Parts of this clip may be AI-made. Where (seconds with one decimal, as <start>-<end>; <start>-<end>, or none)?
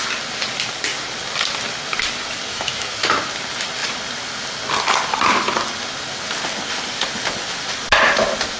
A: 2.5-3.2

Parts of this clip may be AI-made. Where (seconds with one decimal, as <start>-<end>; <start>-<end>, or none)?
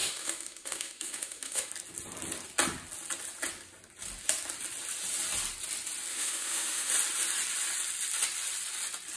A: 0.0-1.7; 6.1-6.9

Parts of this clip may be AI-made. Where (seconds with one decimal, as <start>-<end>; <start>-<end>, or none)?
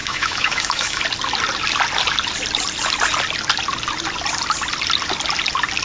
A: 0.0-1.0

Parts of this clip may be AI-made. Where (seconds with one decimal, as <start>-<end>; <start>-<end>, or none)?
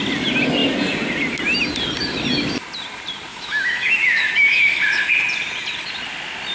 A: 3.3-5.1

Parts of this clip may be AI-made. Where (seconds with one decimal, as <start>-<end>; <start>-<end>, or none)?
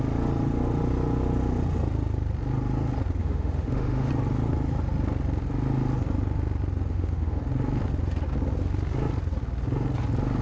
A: 3.2-4.1; 6.9-7.4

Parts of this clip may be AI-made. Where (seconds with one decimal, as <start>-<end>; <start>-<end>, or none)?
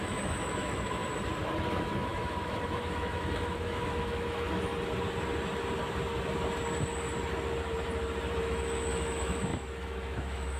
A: 0.0-1.0; 1.7-4.7; 8.4-10.6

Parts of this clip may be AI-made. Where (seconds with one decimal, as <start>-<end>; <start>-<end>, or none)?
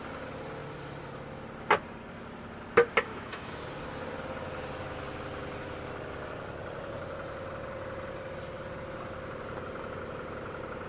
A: 3.1-3.6